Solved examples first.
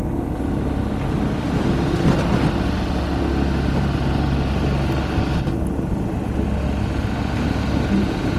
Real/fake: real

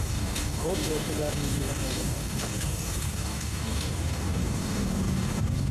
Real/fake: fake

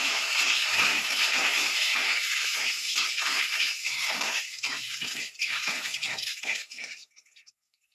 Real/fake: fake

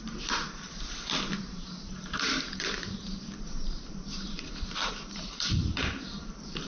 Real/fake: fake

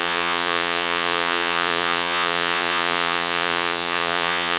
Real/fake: fake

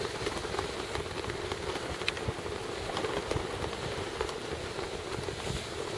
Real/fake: fake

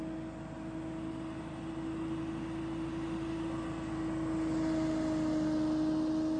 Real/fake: real